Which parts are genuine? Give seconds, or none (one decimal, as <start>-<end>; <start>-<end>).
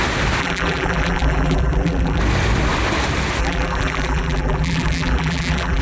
0.0-0.4; 2.2-3.4